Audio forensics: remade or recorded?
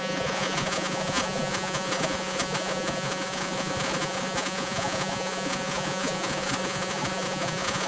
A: remade